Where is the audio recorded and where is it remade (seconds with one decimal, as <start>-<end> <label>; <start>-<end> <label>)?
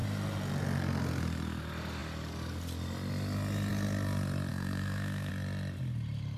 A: 0.0-4.5 recorded; 4.5-5.3 remade; 5.3-6.4 recorded